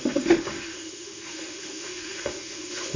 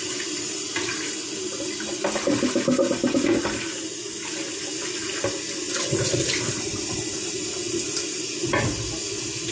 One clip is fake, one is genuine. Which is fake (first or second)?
first